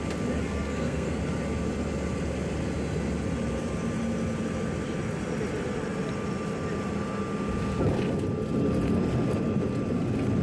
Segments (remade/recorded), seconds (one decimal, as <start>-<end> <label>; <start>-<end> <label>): 0.0-0.4 recorded; 0.4-1.2 remade; 1.2-10.4 recorded